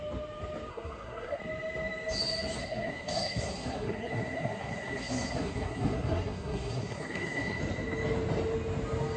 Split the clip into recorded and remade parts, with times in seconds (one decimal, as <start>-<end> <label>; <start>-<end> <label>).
0.0-0.7 recorded; 0.7-1.4 remade; 1.4-2.6 recorded; 2.6-7.6 remade; 7.6-9.2 recorded